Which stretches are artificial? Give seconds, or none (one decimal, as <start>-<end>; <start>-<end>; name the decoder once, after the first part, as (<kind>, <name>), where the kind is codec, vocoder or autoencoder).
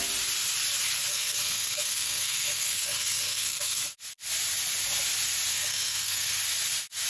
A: 1.1-3.8 (codec, SNAC); 5.5-6.4